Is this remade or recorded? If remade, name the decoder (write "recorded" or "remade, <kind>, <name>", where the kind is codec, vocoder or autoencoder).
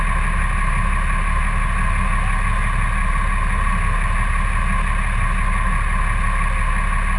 recorded